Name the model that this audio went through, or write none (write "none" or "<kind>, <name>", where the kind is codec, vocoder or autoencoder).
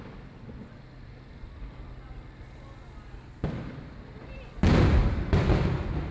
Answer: none